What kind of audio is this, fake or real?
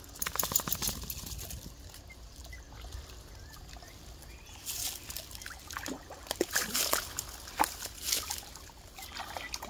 real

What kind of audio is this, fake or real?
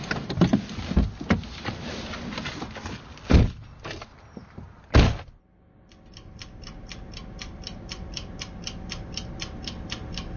real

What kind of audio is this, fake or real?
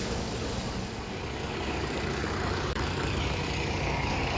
fake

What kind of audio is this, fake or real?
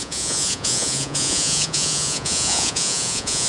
fake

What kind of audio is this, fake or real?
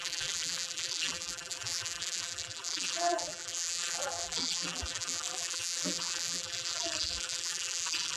fake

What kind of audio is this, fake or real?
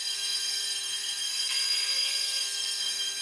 fake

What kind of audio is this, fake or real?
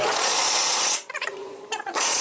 fake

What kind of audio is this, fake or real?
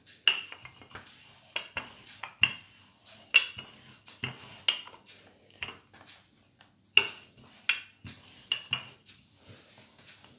real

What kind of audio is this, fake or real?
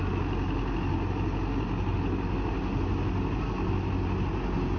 real